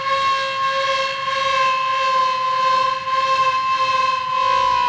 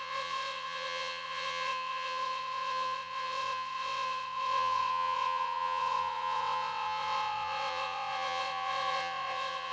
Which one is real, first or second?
first